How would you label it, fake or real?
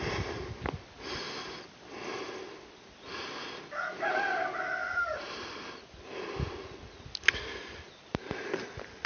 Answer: real